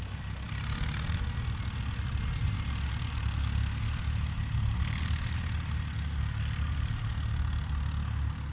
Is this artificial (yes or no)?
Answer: no